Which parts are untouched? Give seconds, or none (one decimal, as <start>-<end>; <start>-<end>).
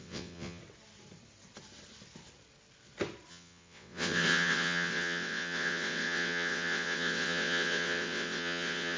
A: 0.6-3.3